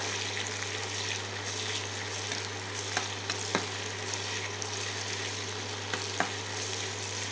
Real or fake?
real